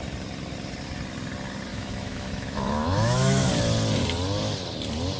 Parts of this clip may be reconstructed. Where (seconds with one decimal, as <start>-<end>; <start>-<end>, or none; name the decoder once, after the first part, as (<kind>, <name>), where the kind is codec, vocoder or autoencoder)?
1.7-3.5 (autoencoder, DAC-VAE)